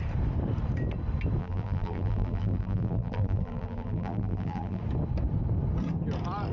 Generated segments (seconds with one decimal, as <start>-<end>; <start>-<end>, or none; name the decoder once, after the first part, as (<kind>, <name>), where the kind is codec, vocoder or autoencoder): 1.4-4.8 (vocoder, BigVGAN v2)